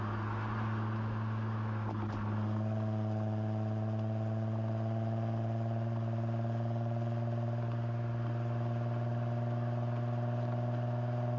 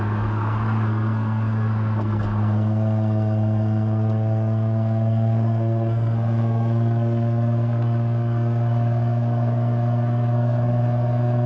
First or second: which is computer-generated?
second